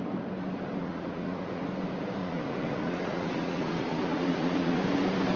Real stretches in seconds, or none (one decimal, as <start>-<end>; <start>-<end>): 0.0-0.8; 1.6-2.2; 4.8-5.4